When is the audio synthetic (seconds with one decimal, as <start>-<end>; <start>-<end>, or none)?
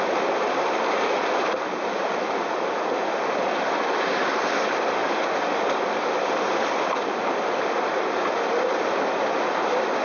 none